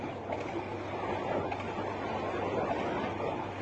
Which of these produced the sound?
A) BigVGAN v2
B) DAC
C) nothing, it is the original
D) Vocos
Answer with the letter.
C